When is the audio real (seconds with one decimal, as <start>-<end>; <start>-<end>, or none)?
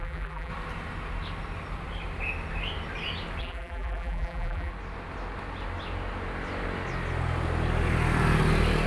0.5-3.4; 4.7-8.9